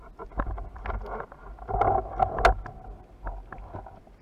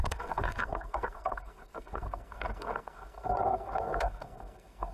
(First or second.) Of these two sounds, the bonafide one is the first